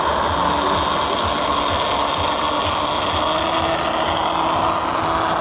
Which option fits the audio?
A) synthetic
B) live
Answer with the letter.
B